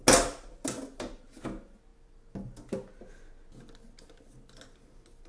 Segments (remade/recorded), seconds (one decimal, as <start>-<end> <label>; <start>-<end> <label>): 0.0-5.3 recorded